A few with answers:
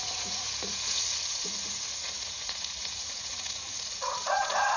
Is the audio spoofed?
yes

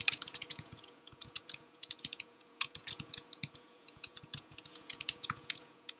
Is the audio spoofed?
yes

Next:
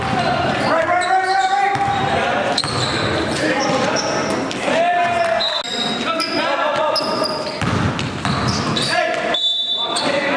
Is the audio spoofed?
no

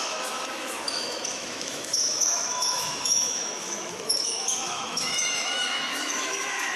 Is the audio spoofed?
yes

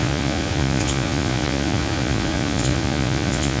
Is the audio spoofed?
yes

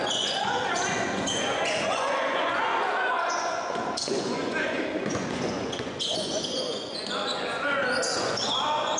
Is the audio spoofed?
yes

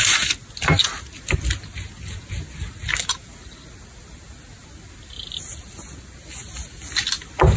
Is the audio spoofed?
no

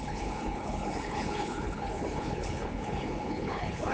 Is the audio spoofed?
yes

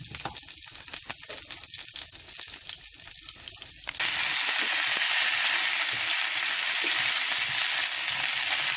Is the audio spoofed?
no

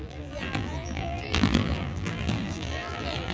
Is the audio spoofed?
yes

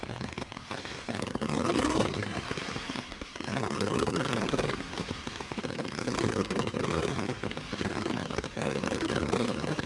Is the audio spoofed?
yes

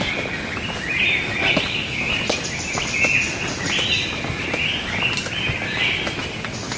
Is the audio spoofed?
no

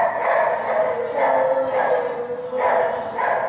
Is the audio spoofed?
no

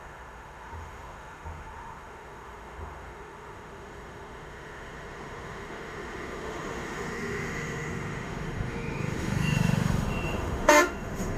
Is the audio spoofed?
yes